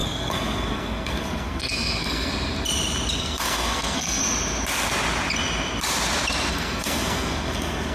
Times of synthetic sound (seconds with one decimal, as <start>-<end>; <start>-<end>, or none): 0.0-2.3; 3.2-4.2; 6.5-7.9